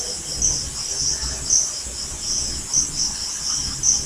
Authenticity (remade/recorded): recorded